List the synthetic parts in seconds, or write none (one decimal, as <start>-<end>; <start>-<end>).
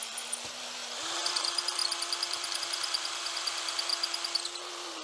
0.0-3.9; 4.6-5.0